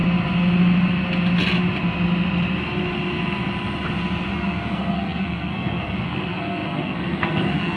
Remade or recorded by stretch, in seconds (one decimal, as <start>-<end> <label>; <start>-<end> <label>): 0.0-4.3 recorded; 4.3-7.8 remade